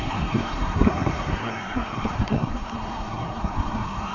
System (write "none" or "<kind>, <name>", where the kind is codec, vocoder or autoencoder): codec, SNAC